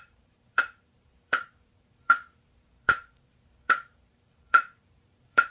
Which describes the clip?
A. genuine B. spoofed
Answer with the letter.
B